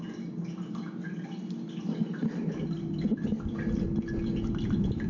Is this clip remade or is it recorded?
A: recorded